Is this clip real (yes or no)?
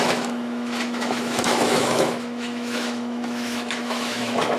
no